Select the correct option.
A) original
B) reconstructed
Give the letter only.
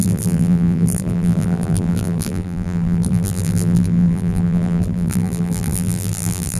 B